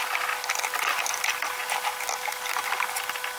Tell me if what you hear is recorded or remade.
recorded